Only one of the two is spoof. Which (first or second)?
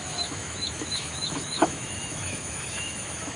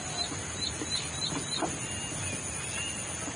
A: first